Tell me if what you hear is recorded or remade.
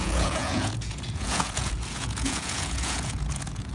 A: remade